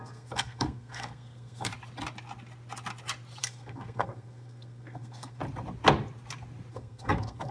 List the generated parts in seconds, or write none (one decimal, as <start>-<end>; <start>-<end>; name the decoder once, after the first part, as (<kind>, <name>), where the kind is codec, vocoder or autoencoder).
0.0-1.7 (codec, SNAC); 3.4-5.4; 6.7-7.5